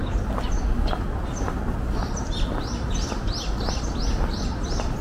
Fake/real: real